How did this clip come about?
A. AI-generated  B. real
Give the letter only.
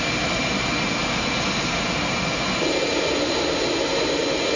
B